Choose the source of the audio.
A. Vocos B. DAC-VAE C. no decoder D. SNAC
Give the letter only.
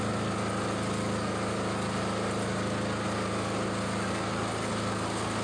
C